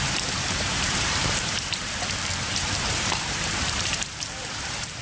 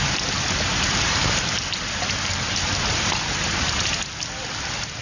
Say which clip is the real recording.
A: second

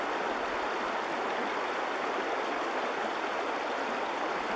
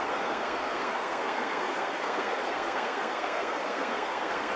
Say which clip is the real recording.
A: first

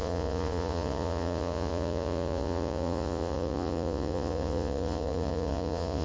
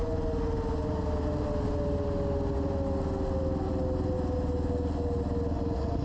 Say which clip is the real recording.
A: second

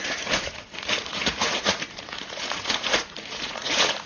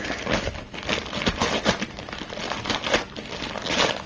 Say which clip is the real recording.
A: second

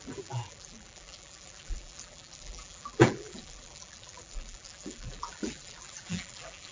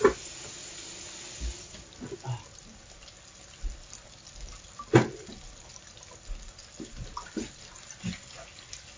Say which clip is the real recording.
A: second